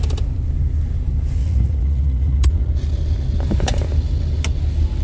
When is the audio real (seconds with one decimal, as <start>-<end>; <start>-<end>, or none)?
0.0-1.4; 2.7-5.0